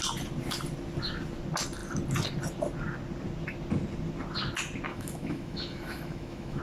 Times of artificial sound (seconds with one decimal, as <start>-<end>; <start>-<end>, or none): 4.9-6.6